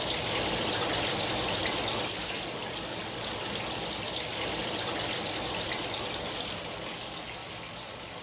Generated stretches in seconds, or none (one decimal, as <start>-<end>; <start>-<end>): none